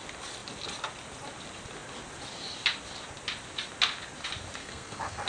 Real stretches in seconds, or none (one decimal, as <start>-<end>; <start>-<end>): 0.0-4.6